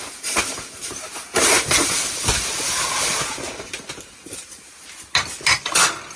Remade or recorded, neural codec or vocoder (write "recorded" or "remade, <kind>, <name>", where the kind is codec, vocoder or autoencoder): recorded